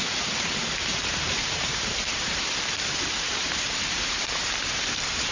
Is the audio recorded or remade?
remade